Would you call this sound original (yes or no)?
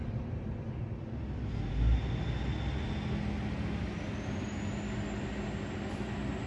yes